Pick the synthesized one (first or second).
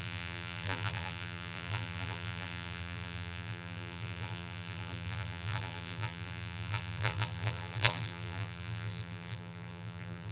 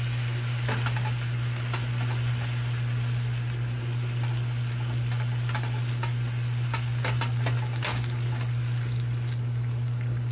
first